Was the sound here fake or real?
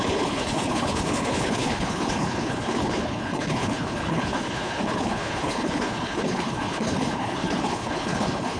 fake